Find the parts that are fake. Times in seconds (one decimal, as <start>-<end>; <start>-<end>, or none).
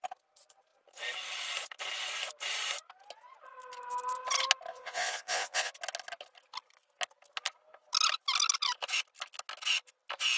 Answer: 4.7-5.7